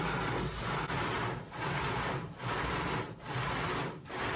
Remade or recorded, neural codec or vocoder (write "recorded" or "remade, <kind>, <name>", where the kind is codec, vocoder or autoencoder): recorded